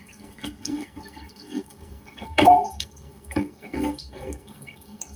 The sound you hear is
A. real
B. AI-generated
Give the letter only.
B